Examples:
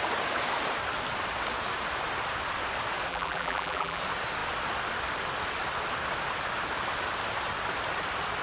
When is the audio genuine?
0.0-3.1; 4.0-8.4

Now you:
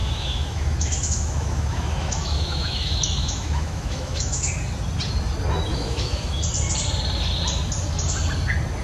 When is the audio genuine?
4.5-5.7; 6.4-8.8

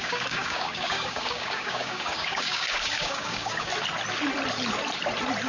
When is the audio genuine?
3.7-5.5

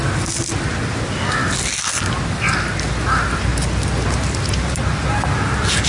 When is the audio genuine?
0.0-5.9

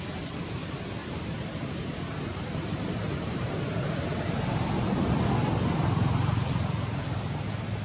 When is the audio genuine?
0.0-1.0; 4.7-5.4; 6.3-7.8

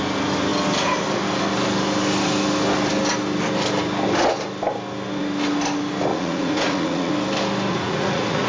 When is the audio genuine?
0.0-6.1; 7.1-7.7

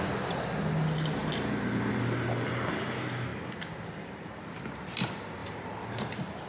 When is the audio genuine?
0.0-6.5